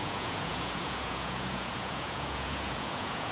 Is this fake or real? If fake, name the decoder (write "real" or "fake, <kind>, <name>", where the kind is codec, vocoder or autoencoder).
fake, vocoder, Vocos